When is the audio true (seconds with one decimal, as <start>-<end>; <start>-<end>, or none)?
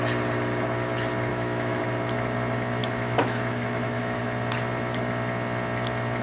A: 0.0-1.3; 1.8-2.8; 4.2-6.2